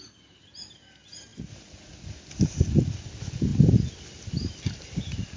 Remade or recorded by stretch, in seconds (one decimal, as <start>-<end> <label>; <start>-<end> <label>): 0.0-5.4 recorded

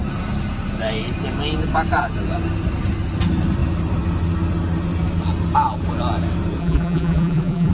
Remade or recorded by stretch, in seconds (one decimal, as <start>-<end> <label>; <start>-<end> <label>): 0.0-6.6 recorded; 6.6-7.7 remade

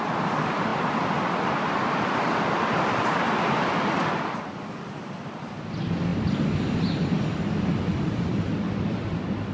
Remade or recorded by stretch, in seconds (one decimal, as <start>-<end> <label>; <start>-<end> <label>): 0.0-9.5 recorded

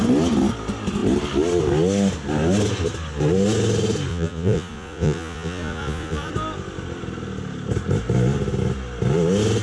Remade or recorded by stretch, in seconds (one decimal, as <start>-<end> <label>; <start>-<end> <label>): 0.0-4.1 recorded; 4.1-6.3 remade; 6.3-9.6 recorded

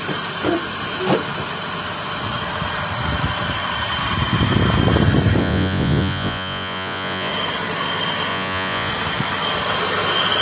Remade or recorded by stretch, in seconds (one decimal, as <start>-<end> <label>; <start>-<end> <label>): 0.0-5.4 recorded; 5.4-7.3 remade; 7.3-8.3 recorded; 8.3-8.9 remade; 8.9-10.4 recorded

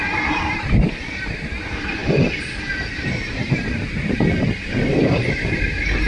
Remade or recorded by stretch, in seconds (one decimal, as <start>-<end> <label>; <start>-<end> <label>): 0.0-2.0 remade; 2.0-2.9 recorded; 2.9-6.1 remade

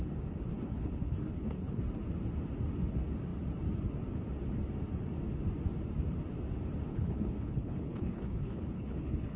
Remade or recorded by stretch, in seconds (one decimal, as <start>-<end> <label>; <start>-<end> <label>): 0.0-0.5 recorded; 0.5-1.8 remade; 1.8-6.9 recorded; 6.9-9.4 remade